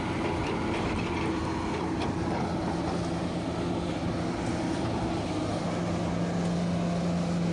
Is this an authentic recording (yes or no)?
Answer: yes